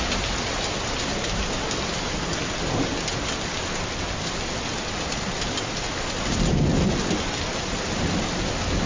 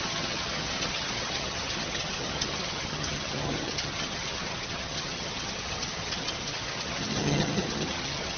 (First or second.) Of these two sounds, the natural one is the first